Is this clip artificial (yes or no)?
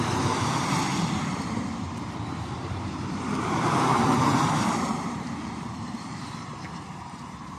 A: yes